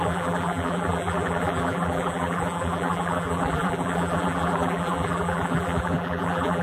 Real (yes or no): no